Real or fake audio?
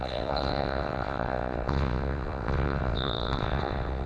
fake